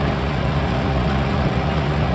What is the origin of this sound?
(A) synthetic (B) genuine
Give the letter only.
A